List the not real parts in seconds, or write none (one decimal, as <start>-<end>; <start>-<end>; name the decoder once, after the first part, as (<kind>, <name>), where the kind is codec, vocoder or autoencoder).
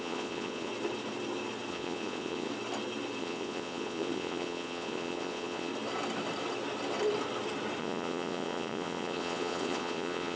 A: 0.0-0.7 (vocoder, Vocos); 1.7-2.5; 3.2-5.7; 7.8-10.4